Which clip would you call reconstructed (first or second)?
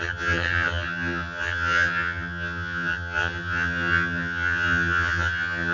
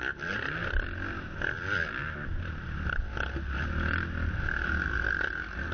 first